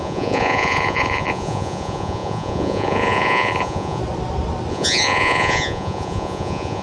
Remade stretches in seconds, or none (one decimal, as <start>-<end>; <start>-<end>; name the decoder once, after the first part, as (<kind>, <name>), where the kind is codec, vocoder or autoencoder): 0.0-4.0 (vocoder, Vocos); 4.7-6.8